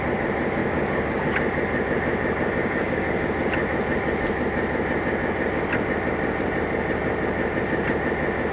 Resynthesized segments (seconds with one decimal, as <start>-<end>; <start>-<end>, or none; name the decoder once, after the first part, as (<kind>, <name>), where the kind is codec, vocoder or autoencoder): 0.6-1.3 (codec, DAC); 2.6-3.2

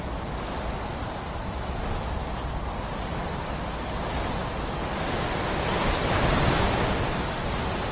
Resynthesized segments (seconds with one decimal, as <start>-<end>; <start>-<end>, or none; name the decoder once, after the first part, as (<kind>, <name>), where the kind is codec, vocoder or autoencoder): none